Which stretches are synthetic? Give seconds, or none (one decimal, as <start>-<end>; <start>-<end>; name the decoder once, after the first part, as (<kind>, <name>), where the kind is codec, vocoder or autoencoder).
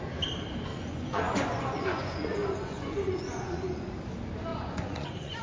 0.7-3.9 (vocoder, Vocos); 4.5-5.4